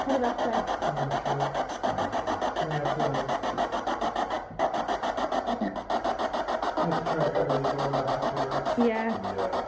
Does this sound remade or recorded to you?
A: recorded